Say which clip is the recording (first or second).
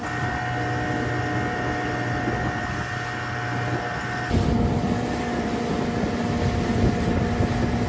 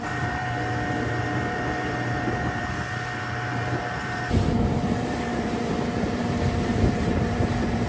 first